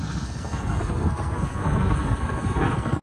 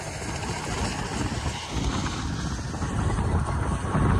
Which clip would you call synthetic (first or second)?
first